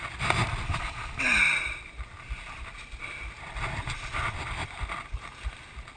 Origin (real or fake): real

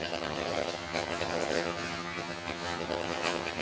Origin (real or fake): fake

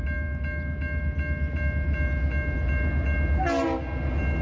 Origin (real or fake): real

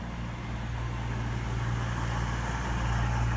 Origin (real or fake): real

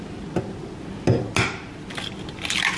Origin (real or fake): real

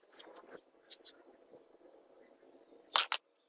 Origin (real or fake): real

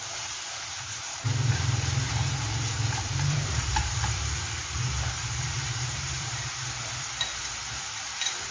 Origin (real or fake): fake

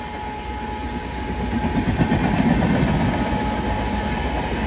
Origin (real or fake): real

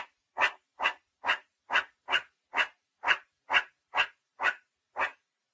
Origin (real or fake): fake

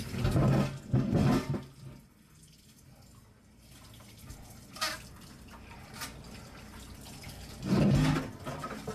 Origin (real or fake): real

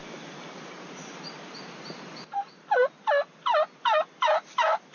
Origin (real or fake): real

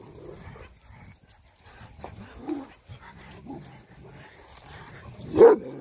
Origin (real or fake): real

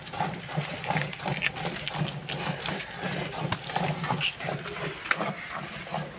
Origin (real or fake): real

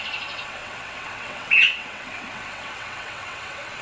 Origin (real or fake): fake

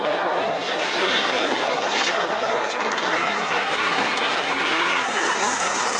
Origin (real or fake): fake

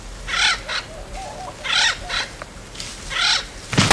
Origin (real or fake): real